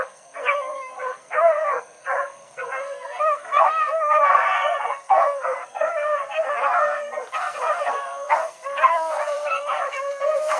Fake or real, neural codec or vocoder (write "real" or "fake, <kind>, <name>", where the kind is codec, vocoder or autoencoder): fake, codec, SNAC